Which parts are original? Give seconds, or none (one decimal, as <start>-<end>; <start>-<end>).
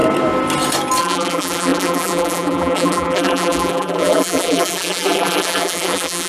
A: 0.0-1.0